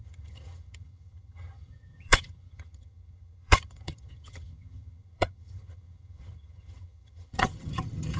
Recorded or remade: remade